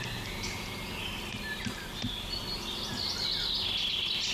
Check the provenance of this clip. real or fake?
real